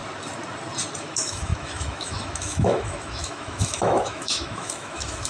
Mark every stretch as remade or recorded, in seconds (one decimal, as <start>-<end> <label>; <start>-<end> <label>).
0.0-1.0 recorded; 1.0-5.3 remade